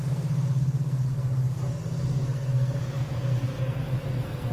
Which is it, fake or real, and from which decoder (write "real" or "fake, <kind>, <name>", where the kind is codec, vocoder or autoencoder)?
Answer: fake, codec, SNAC